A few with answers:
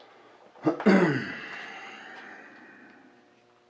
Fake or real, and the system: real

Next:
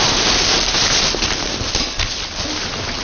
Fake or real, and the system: real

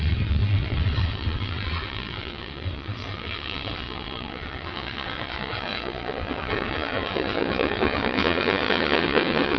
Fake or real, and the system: fake, vocoder, WaveNeXt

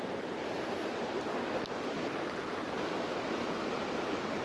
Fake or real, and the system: real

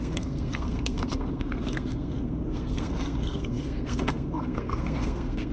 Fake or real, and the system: fake, codec, SNAC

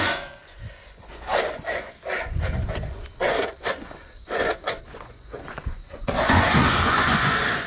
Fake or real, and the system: fake, vocoder, Vocos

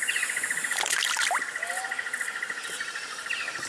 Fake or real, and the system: fake, vocoder, BigVGAN v2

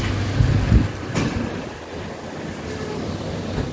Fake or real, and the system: real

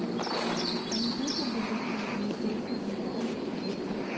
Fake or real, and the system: real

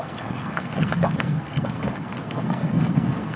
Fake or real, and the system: fake, codec, SNAC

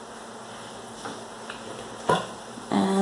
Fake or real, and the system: real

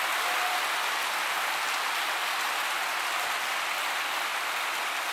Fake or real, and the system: real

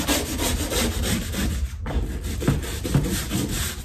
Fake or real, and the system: real